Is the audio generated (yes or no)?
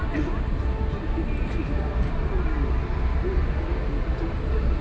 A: no